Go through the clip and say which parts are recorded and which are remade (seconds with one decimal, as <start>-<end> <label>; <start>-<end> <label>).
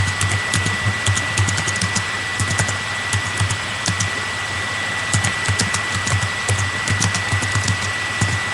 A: 0.0-8.5 recorded